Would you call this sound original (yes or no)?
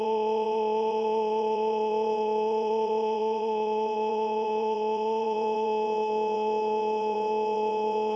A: no